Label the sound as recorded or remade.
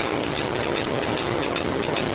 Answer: remade